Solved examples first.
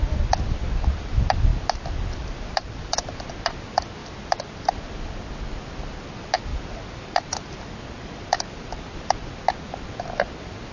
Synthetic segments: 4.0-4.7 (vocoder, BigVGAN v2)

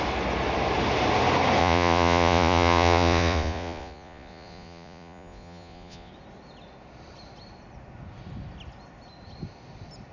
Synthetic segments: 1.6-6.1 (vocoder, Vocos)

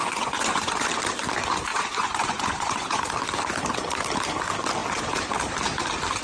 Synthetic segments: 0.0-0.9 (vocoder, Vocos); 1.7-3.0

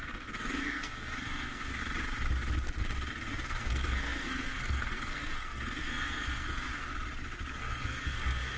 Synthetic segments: 0.0-1.8 (codec, SNAC); 3.1-6.9; 7.5-8.6

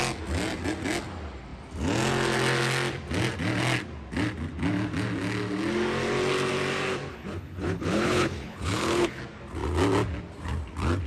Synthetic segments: 7.1-9.2 (codec, HILCodec)